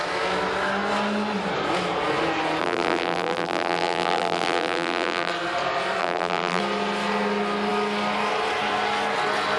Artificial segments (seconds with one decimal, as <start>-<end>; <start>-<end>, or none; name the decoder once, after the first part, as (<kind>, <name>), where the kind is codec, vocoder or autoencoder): 2.6-5.3 (vocoder, BigVGAN v2); 6.0-6.6